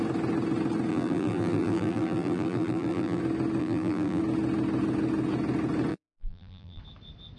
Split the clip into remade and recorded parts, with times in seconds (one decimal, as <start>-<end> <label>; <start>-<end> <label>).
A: 0.0-0.9 recorded; 0.9-3.2 remade; 3.2-3.6 recorded; 3.6-4.2 remade; 4.2-5.9 recorded; 5.9-6.8 remade; 6.8-7.4 recorded